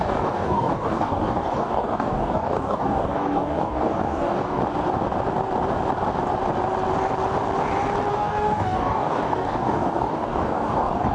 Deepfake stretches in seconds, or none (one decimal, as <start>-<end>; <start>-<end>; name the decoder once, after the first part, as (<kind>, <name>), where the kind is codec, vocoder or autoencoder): 0.0-4.6 (codec, DAC); 8.1-11.1